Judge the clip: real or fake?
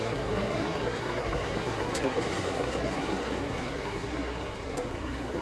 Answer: fake